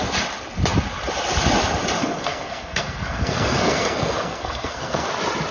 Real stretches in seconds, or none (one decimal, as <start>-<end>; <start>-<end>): 0.0-2.0; 5.1-5.5